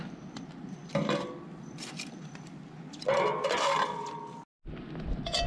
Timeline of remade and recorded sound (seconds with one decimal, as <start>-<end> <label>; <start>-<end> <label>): 0.0-0.8 recorded; 0.8-4.1 remade; 4.1-5.5 recorded